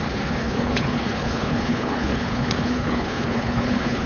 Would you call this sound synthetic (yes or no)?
yes